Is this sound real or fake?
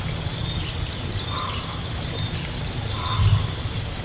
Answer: real